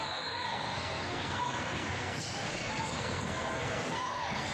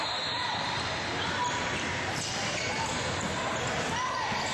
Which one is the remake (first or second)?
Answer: first